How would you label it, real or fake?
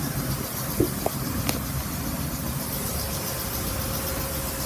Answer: real